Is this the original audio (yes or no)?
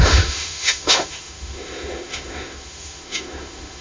no